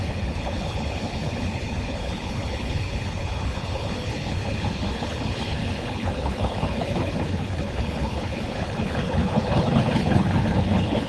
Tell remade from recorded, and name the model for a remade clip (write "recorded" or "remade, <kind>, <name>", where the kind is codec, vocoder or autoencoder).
remade, codec, HILCodec